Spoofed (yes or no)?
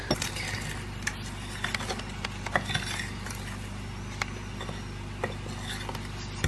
no